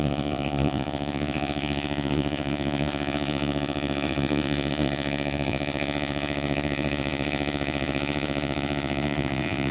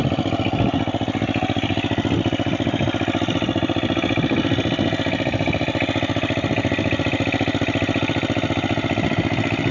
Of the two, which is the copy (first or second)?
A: first